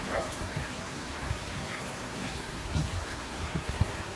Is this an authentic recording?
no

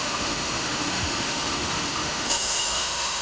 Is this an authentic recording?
no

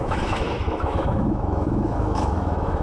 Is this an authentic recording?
no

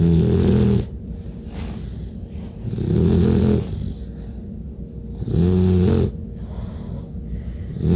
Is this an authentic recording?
yes